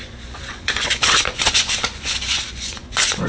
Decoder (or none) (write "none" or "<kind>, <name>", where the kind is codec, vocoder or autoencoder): vocoder, Vocos